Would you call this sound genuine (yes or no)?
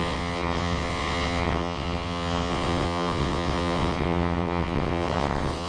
no